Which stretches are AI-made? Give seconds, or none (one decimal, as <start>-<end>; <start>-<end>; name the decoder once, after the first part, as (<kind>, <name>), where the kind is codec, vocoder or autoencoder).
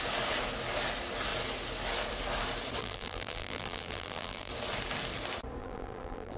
2.8-4.5 (vocoder, BigVGAN v2); 5.6-6.4